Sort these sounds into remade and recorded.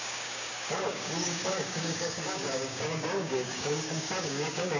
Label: remade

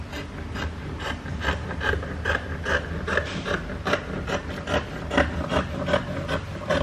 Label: recorded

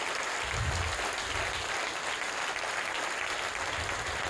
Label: recorded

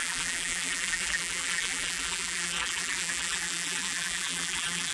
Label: remade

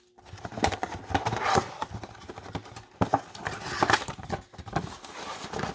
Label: recorded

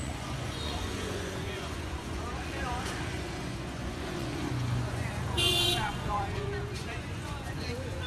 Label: remade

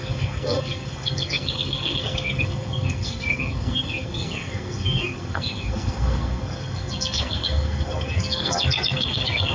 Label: remade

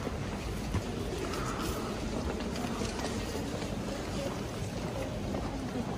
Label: recorded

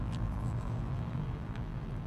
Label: remade